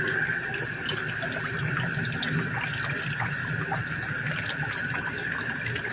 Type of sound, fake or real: real